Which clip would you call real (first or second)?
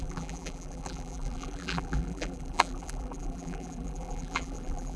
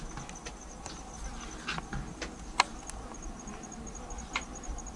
second